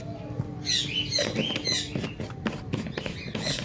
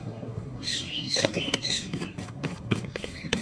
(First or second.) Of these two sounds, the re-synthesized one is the second